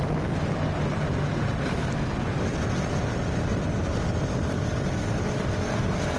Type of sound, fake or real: real